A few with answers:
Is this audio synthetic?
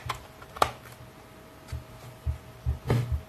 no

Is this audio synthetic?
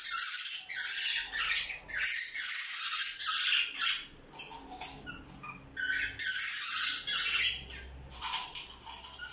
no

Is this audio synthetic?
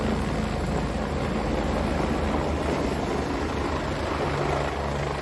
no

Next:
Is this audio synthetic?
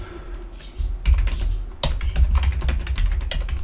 no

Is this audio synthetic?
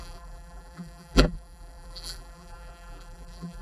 yes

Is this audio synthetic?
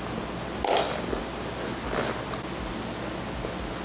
no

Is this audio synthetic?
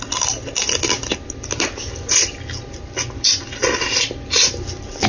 no